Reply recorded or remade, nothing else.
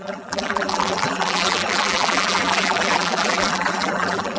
remade